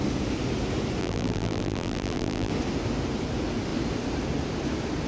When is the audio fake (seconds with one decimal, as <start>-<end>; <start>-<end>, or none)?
1.0-2.5